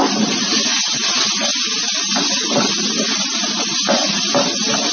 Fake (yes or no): no